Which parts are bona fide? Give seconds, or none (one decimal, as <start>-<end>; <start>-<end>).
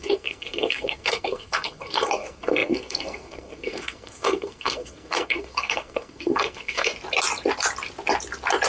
6.9-8.7